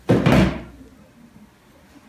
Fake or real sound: real